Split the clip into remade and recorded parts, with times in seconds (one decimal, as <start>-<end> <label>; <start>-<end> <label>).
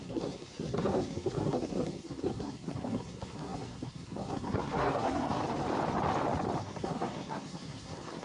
0.0-5.4 remade; 5.4-6.6 recorded; 6.6-8.2 remade